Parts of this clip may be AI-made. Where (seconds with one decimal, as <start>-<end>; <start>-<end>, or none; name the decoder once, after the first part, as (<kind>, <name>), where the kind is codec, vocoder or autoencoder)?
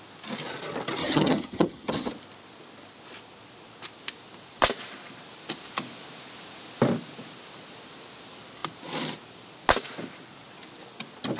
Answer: 1.0-2.1 (vocoder, HiFi-GAN)